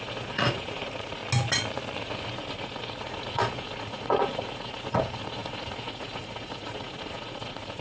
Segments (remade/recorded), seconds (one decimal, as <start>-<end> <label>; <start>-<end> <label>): 0.0-1.2 remade; 1.2-2.0 recorded; 2.0-7.8 remade